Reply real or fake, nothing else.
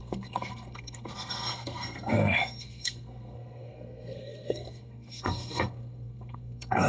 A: fake